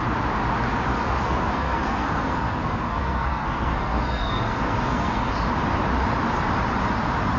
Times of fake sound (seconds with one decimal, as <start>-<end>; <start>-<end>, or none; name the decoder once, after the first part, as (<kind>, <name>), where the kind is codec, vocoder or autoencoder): 0.9-5.3 (codec, SNAC)